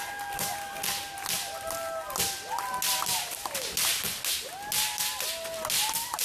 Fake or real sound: real